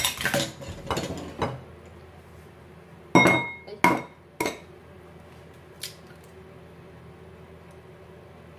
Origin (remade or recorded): recorded